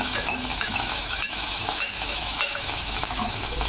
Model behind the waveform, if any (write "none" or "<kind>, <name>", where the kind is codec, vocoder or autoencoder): autoencoder, DAC-VAE